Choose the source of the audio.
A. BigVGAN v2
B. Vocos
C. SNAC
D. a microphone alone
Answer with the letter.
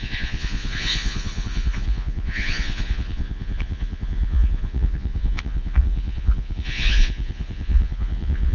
B